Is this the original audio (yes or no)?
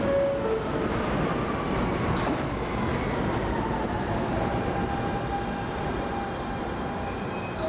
yes